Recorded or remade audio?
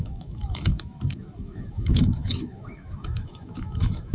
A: remade